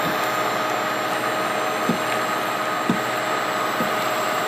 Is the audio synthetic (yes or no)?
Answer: no